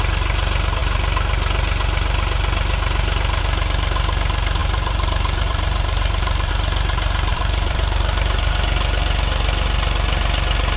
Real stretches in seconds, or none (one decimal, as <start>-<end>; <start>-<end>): 0.0-4.6; 6.5-7.3; 8.5-10.8